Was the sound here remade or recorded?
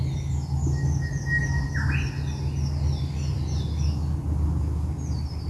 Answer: recorded